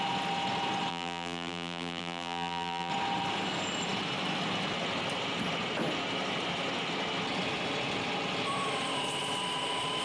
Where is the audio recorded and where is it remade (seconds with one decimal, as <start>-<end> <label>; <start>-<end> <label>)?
0.0-0.9 recorded; 0.9-2.9 remade; 2.9-10.0 recorded